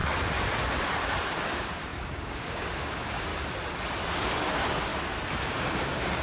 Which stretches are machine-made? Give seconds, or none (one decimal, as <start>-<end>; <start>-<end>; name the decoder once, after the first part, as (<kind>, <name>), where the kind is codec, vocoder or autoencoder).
1.3-3.3 (codec, DAC); 4.1-4.9; 5.5-6.2

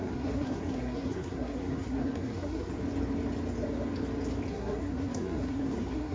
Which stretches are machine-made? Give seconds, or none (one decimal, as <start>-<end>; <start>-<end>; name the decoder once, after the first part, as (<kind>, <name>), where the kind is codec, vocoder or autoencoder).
0.0-2.7 (codec, SNAC); 4.5-6.1

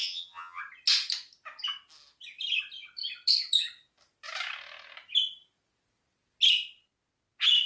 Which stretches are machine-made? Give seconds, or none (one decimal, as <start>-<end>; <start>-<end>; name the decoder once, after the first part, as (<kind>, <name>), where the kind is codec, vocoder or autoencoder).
0.0-0.6 (vocoder, HiFi-GAN)

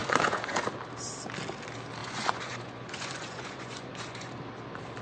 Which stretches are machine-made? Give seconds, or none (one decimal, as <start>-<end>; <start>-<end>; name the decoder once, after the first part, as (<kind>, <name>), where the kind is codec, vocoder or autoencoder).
0.0-0.6 (vocoder, Vocos); 2.0-4.3

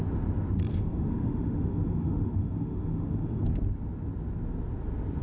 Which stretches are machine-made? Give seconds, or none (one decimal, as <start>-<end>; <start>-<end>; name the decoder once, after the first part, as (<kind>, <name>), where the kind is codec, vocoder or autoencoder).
0.7-3.4 (autoencoder, DAC-VAE)